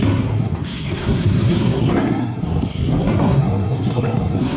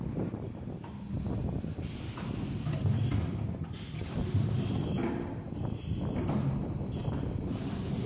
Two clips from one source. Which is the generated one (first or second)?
first